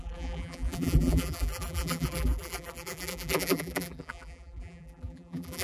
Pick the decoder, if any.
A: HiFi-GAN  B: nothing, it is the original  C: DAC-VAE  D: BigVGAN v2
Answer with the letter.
D